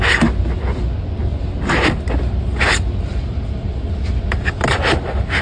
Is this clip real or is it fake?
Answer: real